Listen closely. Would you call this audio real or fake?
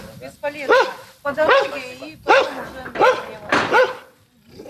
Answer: real